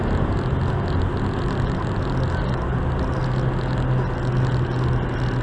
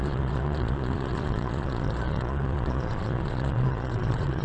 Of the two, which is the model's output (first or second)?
second